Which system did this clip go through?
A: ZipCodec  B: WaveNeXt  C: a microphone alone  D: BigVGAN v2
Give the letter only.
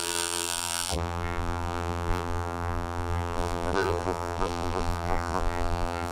D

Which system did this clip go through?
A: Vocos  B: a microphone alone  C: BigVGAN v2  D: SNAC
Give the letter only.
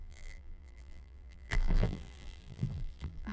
C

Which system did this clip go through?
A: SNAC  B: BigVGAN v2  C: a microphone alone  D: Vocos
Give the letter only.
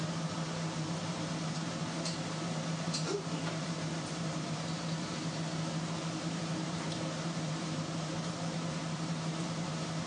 B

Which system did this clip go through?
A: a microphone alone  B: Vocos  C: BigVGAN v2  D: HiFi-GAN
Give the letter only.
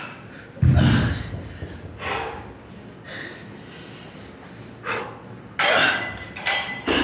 A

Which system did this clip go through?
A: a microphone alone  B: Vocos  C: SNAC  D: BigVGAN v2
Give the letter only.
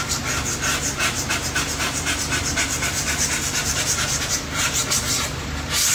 D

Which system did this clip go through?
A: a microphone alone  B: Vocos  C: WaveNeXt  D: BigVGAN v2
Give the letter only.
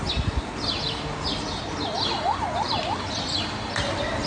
A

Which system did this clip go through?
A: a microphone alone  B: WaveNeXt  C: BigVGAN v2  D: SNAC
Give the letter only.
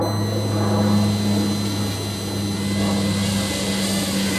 A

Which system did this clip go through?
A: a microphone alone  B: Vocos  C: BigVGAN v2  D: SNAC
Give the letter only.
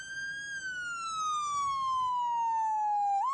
A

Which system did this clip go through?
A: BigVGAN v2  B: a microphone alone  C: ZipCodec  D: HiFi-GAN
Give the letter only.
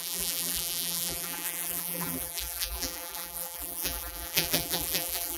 A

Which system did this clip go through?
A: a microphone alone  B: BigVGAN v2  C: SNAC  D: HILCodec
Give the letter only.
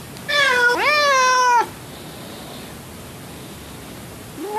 A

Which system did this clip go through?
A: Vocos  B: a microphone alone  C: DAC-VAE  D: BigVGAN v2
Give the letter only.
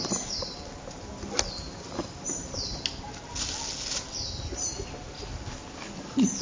B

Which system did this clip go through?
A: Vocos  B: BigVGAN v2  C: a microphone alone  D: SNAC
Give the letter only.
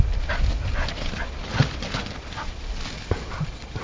C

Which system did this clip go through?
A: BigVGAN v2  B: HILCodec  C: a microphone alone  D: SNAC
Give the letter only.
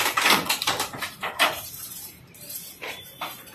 A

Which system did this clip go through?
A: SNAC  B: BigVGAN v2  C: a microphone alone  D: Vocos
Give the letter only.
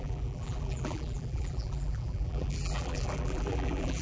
B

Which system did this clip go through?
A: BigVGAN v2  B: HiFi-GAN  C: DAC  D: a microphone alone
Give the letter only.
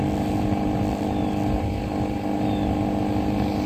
A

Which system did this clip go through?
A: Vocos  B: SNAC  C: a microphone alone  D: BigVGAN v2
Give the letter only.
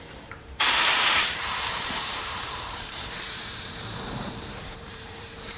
D